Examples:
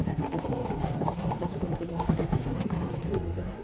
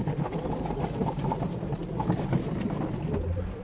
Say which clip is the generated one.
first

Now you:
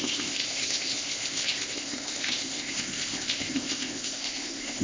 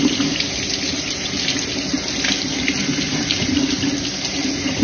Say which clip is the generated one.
first